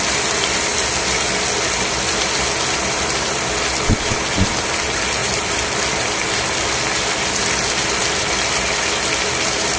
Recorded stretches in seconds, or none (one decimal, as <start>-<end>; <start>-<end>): 0.0-9.8